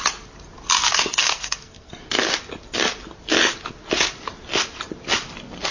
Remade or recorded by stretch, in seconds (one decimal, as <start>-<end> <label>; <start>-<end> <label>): 0.0-1.2 recorded; 1.2-1.9 remade; 1.9-5.7 recorded